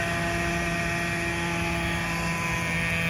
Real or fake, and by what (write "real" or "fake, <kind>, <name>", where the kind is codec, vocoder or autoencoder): real